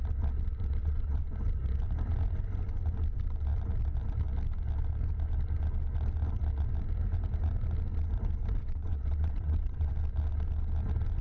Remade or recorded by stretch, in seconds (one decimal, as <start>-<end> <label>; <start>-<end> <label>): 0.0-0.8 recorded; 0.8-1.3 remade; 1.3-8.6 recorded; 8.6-9.9 remade; 9.9-11.2 recorded